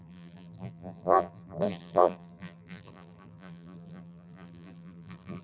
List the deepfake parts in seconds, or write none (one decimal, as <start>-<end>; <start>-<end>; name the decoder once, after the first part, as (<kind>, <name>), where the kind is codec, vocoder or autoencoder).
0.0-5.4 (vocoder, BigVGAN v2)